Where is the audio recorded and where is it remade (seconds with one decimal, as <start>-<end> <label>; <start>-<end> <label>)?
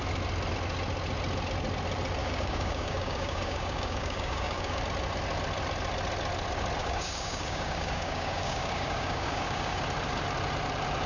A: 0.0-2.2 recorded; 2.2-4.8 remade; 4.8-6.8 recorded; 6.8-9.8 remade; 9.8-11.1 recorded